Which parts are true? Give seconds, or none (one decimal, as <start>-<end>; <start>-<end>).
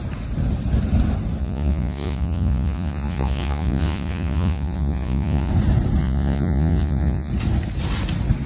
0.0-1.4; 5.5-6.0; 7.3-8.5